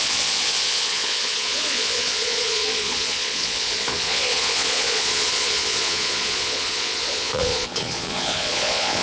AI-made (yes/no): yes